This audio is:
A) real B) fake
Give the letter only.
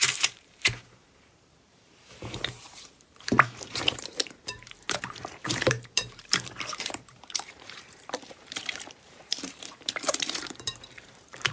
B